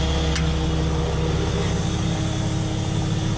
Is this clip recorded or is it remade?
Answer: recorded